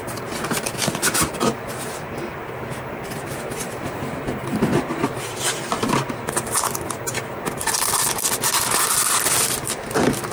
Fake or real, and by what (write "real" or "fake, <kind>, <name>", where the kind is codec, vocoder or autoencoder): real